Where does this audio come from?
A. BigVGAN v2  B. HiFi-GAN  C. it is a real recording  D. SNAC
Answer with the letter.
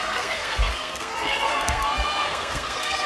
D